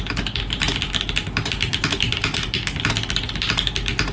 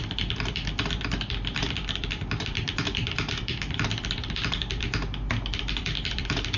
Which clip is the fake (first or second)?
second